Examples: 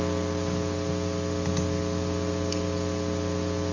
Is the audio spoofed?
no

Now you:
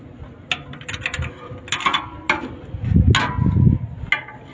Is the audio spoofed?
no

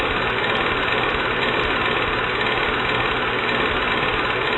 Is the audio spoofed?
no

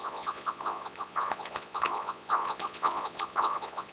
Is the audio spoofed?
yes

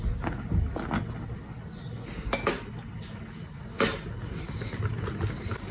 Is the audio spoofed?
no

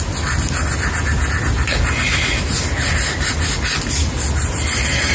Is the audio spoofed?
no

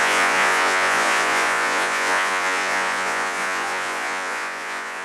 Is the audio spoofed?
yes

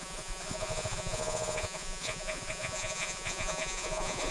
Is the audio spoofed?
yes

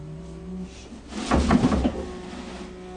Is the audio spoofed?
no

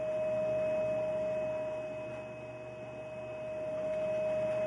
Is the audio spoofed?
no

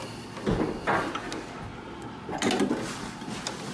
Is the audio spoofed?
no